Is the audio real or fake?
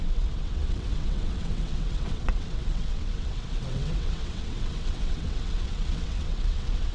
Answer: fake